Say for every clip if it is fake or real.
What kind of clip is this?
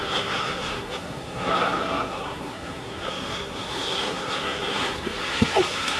fake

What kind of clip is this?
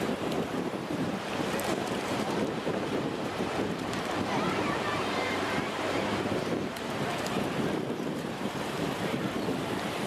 fake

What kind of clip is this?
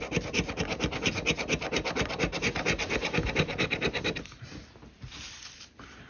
real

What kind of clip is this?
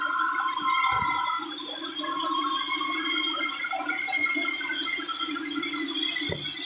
real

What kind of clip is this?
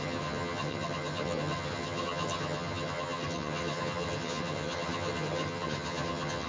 fake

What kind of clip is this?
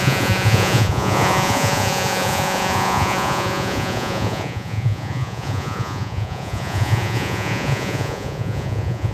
fake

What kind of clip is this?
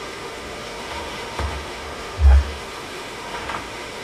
fake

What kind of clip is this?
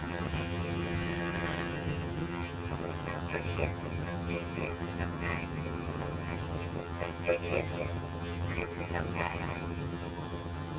fake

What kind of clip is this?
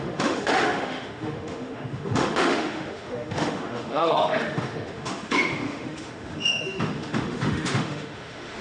fake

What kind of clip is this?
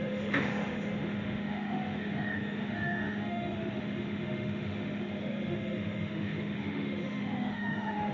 fake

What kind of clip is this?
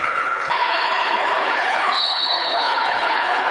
fake